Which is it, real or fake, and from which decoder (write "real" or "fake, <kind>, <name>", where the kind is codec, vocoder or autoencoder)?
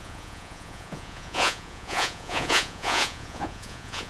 fake, vocoder, Vocos